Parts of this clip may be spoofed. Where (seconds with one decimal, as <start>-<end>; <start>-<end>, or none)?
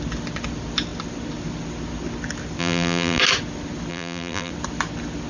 2.6-3.2; 3.9-4.5